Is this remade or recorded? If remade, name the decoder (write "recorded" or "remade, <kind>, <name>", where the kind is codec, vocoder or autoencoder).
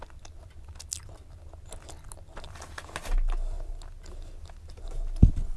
recorded